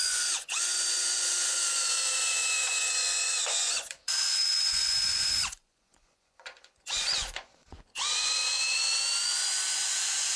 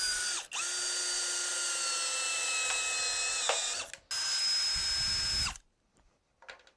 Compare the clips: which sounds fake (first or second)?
first